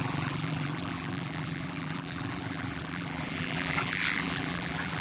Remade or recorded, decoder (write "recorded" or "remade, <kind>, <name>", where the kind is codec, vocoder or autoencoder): remade, vocoder, BigVGAN v2